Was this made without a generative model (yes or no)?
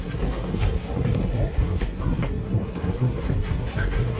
no